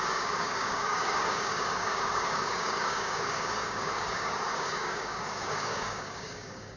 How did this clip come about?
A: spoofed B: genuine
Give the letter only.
A